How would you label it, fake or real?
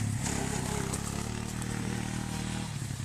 real